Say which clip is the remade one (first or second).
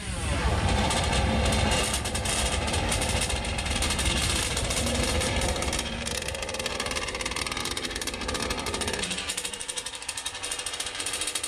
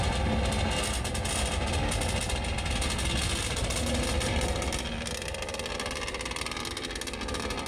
first